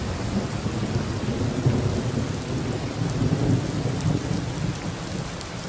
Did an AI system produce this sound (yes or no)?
no